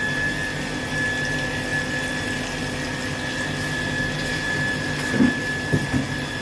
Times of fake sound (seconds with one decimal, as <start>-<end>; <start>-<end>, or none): none